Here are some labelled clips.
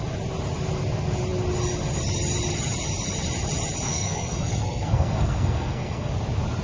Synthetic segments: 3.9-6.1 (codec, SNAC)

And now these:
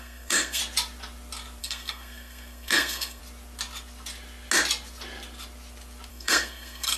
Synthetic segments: 0.0-0.6 (codec, SNAC); 1.6-3.2; 6.1-7.0

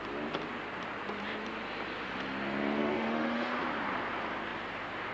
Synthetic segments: 2.8-3.6 (autoencoder, DAC-VAE)